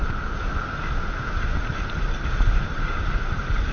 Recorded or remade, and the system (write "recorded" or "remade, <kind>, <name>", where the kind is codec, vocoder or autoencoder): recorded